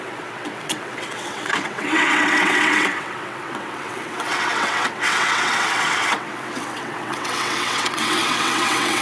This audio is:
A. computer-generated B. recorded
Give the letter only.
A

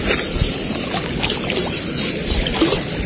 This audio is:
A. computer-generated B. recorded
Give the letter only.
B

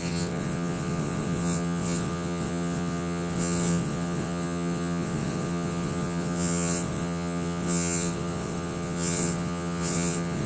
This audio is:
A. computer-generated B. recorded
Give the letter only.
A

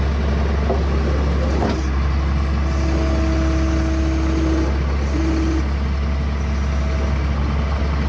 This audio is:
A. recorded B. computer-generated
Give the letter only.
A